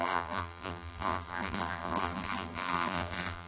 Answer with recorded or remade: remade